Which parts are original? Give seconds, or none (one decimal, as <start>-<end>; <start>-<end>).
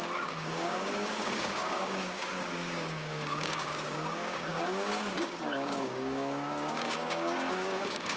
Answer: none